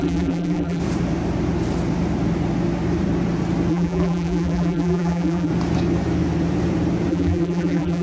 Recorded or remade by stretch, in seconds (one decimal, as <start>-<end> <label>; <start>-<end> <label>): 0.0-0.8 remade; 0.8-3.7 recorded; 3.7-5.5 remade; 5.5-7.1 recorded; 7.1-8.0 remade